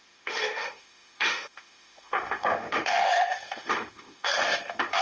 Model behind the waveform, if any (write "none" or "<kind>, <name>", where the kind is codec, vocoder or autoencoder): autoencoder, DAC-VAE